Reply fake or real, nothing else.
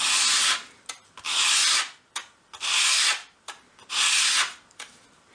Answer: real